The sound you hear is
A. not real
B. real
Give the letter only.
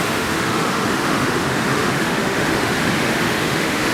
A